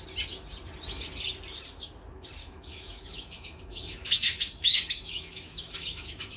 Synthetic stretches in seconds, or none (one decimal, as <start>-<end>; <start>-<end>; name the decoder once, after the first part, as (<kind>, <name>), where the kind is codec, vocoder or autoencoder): 2.4-6.4 (autoencoder, DAC-VAE)